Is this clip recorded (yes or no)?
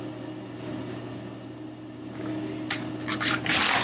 yes